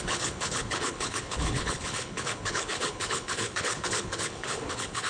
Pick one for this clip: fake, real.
fake